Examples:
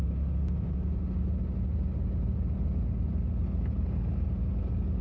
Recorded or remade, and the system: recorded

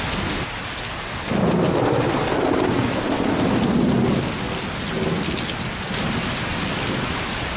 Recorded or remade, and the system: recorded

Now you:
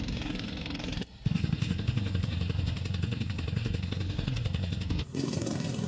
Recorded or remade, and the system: remade, codec, SNAC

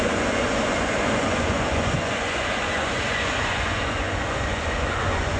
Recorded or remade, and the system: remade, vocoder, Vocos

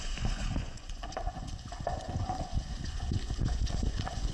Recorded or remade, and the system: remade, vocoder, Vocos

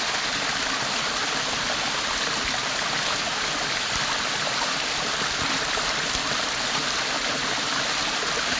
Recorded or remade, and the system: recorded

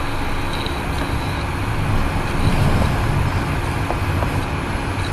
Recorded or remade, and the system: recorded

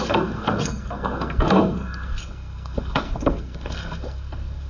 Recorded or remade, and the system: remade, codec, SNAC